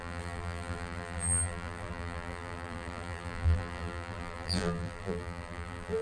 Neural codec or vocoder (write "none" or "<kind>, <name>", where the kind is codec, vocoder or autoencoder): vocoder, BigVGAN v2